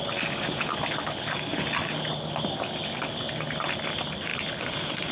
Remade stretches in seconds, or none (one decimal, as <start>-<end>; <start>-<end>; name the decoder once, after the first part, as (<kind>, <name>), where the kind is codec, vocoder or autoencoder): none